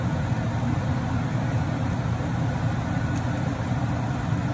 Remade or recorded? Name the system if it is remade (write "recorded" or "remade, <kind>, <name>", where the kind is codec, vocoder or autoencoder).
recorded